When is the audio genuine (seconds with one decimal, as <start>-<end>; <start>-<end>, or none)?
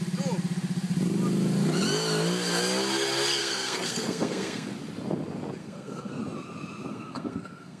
0.0-3.4; 4.7-5.6; 6.2-6.9